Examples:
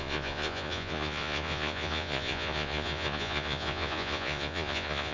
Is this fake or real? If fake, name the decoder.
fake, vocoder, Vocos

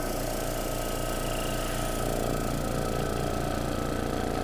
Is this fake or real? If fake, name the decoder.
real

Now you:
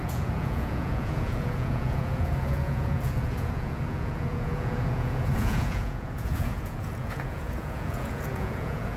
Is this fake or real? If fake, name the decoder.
fake, vocoder, Vocos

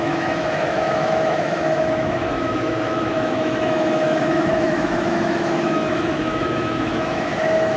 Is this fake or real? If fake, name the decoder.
fake, autoencoder, DAC-VAE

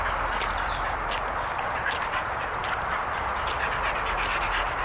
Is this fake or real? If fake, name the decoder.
real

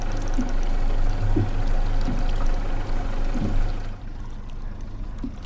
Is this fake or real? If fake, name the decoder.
real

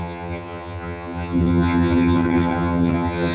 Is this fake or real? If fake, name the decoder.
fake, vocoder, HiFi-GAN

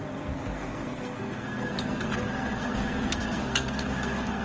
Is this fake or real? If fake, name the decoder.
fake, codec, SNAC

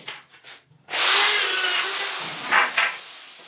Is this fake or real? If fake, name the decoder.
real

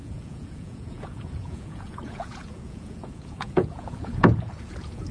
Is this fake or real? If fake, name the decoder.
fake, vocoder, Vocos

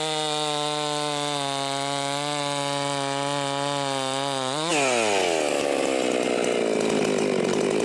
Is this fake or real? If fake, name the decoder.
real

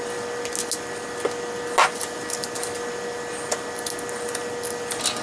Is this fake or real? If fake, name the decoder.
real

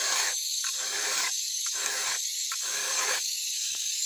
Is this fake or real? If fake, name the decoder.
fake, codec, DAC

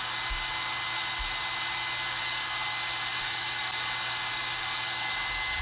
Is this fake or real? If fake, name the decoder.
real